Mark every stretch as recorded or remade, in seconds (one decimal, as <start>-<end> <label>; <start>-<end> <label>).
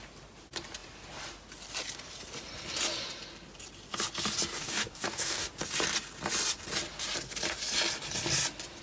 0.0-4.6 recorded; 4.6-5.5 remade; 5.5-8.8 recorded